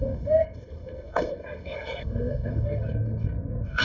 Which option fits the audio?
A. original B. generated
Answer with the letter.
B